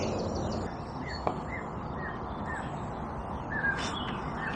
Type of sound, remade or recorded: recorded